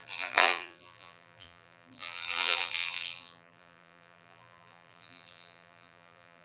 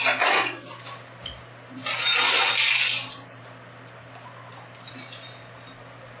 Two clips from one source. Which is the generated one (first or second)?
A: first